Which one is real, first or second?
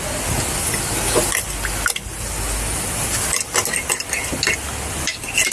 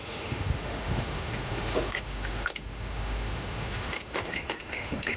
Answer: first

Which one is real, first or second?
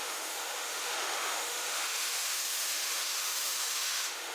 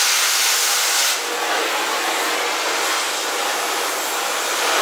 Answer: second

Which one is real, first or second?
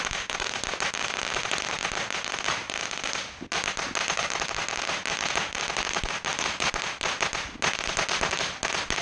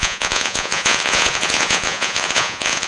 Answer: first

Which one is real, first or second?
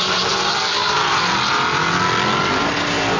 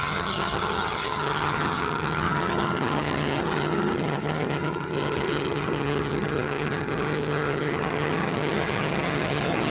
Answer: first